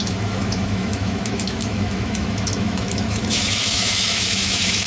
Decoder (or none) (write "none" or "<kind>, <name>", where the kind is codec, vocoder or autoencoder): autoencoder, DAC-VAE